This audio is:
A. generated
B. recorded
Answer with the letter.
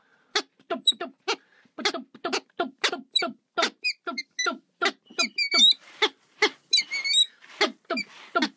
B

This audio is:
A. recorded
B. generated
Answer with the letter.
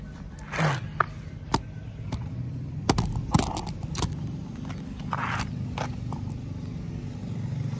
A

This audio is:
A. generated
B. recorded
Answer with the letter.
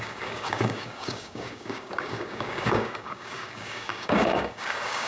A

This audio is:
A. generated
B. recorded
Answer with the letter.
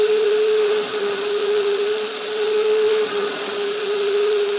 A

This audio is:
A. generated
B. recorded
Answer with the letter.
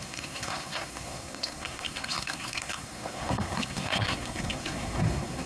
A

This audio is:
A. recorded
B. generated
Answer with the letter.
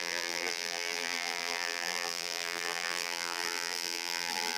B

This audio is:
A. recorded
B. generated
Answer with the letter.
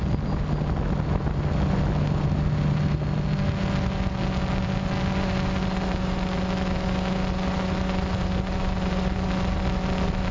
A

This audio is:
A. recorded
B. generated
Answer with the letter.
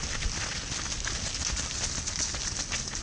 A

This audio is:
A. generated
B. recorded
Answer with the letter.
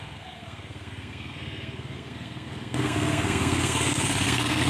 A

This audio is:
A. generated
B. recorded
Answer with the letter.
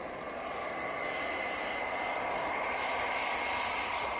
B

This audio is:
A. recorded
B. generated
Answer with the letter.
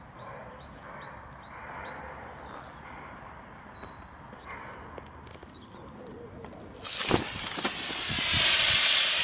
A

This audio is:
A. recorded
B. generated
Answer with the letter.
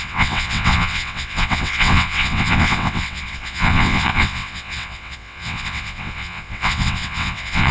B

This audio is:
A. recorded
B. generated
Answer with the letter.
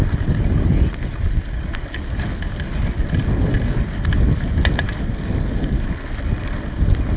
A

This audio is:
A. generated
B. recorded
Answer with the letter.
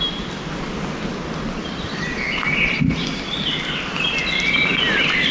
B